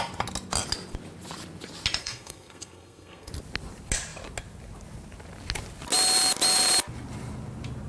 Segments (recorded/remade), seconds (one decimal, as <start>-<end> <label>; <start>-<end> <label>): 0.0-2.0 recorded; 2.0-3.3 remade; 3.3-7.9 recorded